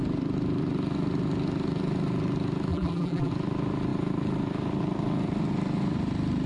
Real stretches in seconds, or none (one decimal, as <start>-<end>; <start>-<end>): 0.0-2.7; 3.3-6.5

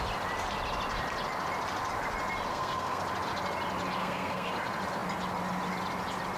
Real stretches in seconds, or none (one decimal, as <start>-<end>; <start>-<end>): 0.0-2.5; 3.0-4.0; 4.5-6.4

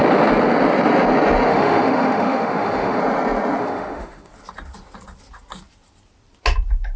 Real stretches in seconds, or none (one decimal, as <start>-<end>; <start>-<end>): 0.0-1.5; 3.0-3.6; 4.3-7.0